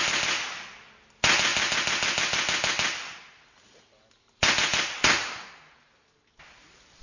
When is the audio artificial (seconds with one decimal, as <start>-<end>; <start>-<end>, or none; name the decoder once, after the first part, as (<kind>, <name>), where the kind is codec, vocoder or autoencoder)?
none